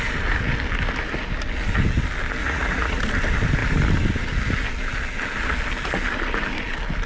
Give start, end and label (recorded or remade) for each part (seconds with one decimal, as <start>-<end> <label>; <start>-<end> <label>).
0.0-2.4 recorded; 2.4-3.0 remade; 3.0-7.1 recorded